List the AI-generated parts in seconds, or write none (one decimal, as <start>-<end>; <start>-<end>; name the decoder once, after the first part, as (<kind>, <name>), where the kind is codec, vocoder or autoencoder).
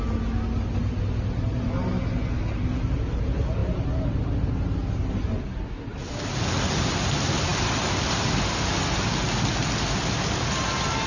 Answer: none